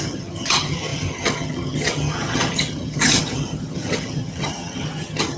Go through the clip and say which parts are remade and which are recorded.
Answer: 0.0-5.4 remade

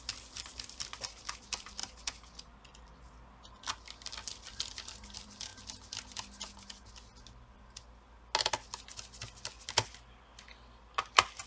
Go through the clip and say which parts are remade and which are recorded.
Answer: 0.0-1.8 remade; 1.8-3.4 recorded; 3.4-5.5 remade; 5.5-8.5 recorded; 8.5-11.5 remade

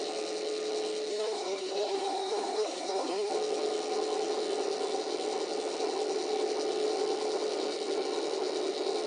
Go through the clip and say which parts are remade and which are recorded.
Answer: 0.0-1.1 recorded; 1.1-3.3 remade; 3.3-9.1 recorded